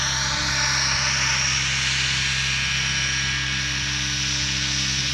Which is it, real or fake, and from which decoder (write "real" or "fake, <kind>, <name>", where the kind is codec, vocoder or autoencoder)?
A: real